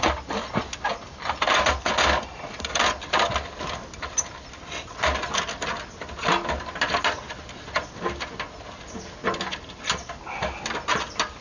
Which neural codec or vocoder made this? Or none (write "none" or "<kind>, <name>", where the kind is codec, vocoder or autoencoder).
none